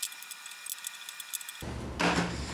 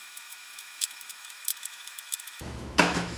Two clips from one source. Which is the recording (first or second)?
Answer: first